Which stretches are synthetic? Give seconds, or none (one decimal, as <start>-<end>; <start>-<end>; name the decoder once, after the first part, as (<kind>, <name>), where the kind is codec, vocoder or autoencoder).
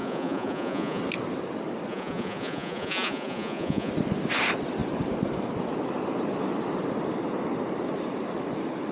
0.0-1.0 (vocoder, Vocos); 1.9-3.9